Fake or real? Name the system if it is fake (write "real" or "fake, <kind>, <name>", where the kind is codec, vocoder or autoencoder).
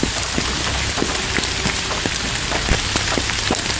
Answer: real